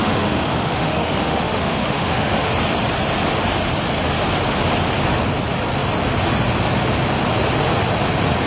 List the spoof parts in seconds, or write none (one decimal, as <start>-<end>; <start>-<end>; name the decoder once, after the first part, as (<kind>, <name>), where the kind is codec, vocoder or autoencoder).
0.0-2.5 (autoencoder, DAC-VAE)